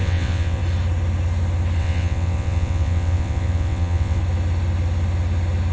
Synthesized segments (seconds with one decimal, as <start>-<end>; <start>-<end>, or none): 0.0-0.6; 1.8-4.2